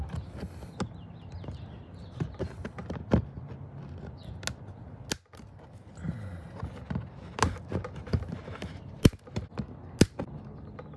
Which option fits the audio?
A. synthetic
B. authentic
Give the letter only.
B